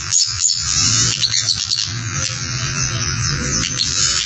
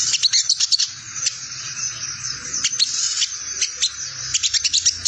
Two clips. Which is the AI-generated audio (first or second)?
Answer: first